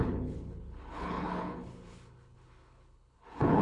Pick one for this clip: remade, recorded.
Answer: remade